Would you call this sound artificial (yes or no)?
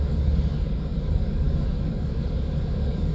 yes